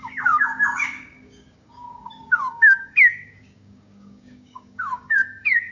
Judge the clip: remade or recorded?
remade